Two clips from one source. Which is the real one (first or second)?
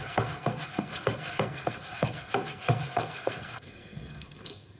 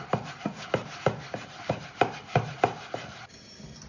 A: second